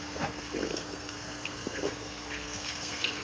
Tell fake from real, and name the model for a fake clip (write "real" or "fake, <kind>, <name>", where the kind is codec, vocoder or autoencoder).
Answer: fake, codec, SNAC